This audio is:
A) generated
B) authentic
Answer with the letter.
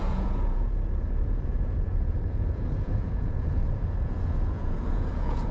A